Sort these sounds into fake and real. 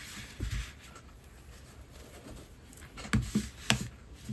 real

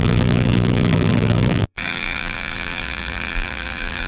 fake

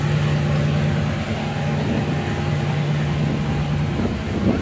real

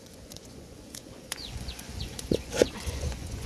fake